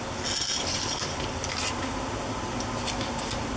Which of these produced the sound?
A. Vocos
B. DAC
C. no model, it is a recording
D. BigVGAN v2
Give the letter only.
C